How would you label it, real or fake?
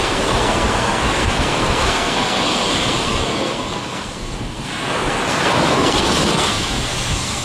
fake